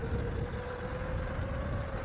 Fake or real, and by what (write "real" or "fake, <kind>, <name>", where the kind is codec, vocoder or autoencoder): real